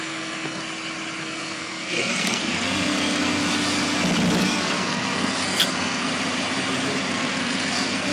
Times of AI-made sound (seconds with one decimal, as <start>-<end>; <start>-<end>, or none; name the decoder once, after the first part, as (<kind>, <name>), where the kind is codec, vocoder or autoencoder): 0.0-0.6 (codec, SNAC); 1.2-3.4; 4.4-6.1; 7.1-8.1